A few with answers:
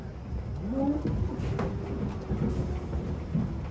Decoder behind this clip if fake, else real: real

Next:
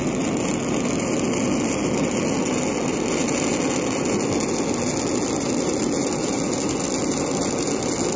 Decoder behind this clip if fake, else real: real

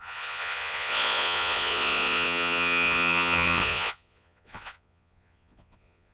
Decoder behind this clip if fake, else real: fake, vocoder, Vocos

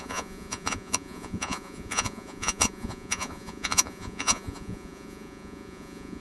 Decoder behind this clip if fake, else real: fake, vocoder, Vocos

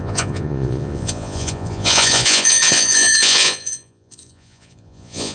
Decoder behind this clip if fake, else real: fake, vocoder, Vocos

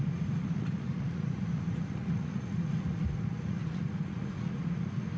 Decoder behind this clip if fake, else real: fake, vocoder, Vocos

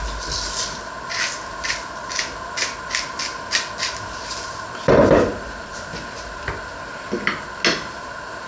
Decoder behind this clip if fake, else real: real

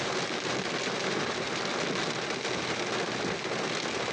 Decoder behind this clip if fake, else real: real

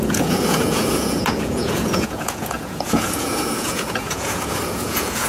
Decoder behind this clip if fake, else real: fake, vocoder, Vocos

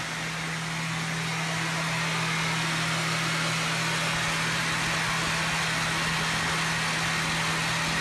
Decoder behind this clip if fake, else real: real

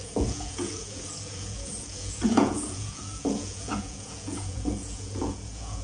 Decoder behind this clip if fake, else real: fake, vocoder, Vocos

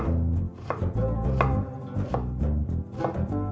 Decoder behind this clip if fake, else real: real